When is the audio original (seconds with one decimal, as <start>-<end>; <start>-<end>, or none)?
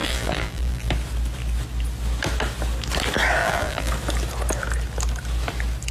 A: 0.9-3.4; 3.9-5.9